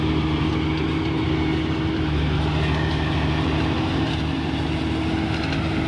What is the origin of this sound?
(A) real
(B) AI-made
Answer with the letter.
A